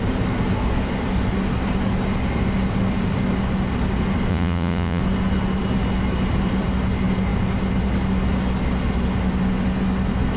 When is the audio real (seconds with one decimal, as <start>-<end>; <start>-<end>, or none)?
0.0-4.3; 5.0-10.4